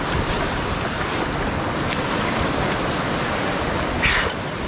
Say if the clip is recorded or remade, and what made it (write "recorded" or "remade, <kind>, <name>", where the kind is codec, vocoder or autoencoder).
recorded